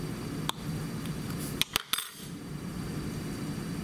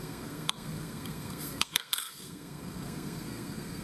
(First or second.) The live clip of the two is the first